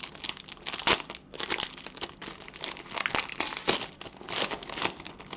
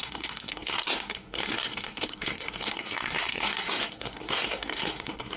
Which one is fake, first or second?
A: second